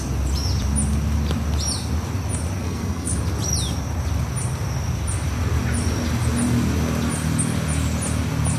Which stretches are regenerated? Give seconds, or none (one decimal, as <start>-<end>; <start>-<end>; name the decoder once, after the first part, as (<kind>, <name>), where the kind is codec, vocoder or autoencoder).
2.6-3.2 (codec, SNAC)